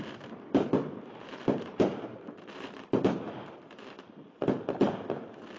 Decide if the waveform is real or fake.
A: fake